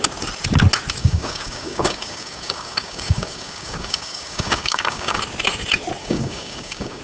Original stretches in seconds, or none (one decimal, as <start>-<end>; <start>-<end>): 0.0-1.0; 5.2-6.0